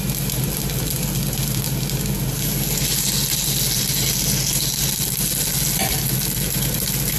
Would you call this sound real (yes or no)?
yes